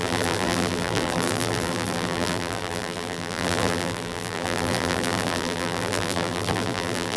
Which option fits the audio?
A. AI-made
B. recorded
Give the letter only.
A